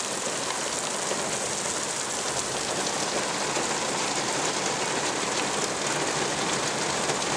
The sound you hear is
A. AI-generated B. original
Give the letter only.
B